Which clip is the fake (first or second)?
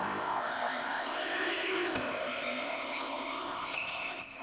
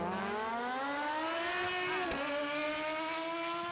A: first